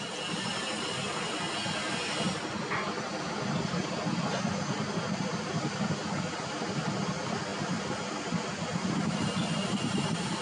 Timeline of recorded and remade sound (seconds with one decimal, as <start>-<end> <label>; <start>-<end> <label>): 0.0-10.4 recorded